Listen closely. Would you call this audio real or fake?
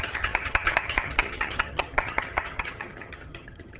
fake